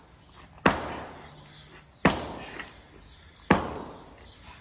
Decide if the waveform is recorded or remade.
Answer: recorded